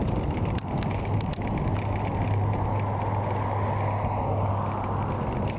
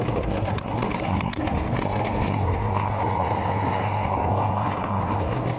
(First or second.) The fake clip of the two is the second